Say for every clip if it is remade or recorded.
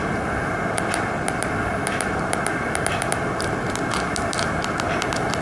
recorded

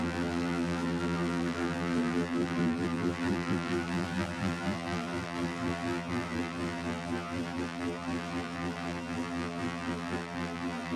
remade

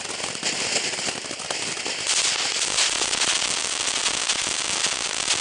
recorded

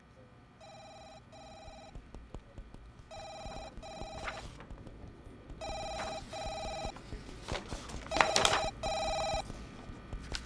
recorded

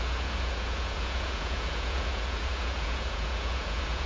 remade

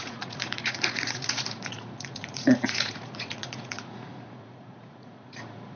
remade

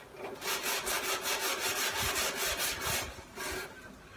recorded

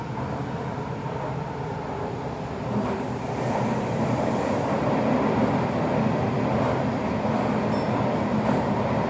recorded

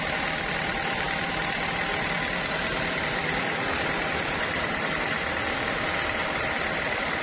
recorded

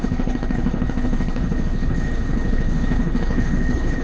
remade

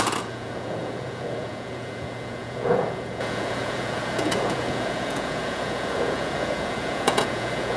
remade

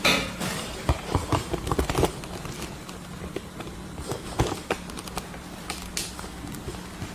recorded